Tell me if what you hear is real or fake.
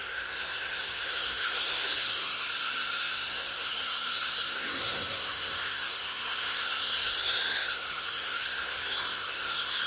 fake